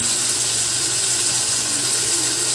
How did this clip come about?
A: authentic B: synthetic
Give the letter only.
B